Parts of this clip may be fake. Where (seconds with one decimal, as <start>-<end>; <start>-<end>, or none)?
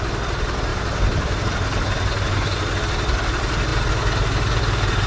none